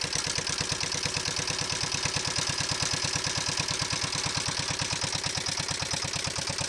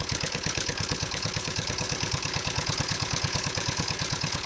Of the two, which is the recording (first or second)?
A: first